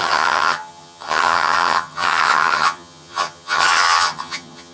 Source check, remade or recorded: remade